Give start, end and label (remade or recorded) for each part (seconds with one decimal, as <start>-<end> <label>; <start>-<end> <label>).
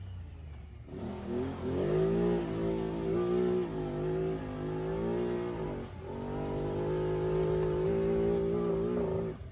0.0-1.1 recorded; 1.1-2.4 remade; 2.4-9.5 recorded